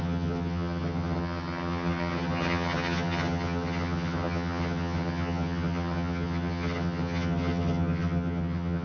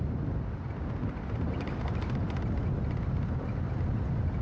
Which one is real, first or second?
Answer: second